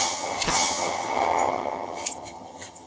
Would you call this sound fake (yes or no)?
yes